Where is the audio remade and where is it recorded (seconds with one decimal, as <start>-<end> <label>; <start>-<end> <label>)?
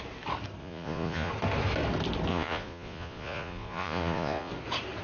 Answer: 0.0-0.6 recorded; 0.6-1.3 remade; 1.3-2.3 recorded; 2.3-4.5 remade; 4.5-5.0 recorded